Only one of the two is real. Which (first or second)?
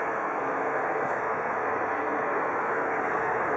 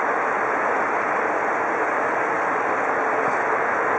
second